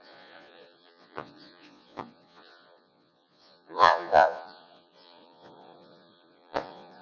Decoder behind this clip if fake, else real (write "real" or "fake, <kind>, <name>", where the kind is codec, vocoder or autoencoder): fake, vocoder, Vocos